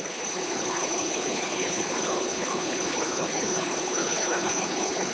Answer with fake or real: fake